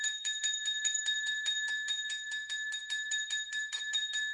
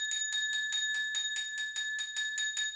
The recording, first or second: second